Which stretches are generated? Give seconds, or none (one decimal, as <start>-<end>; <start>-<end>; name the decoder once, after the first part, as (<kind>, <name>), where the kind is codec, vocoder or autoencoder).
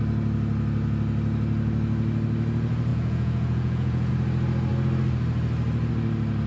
2.9-4.1 (vocoder, Vocos)